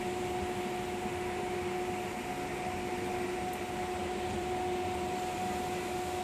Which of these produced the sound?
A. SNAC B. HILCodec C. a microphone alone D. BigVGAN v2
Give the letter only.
D